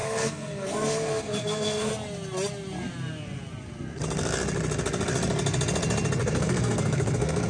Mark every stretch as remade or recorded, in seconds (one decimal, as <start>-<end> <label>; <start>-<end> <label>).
0.0-1.9 remade; 1.9-6.2 recorded; 6.2-7.5 remade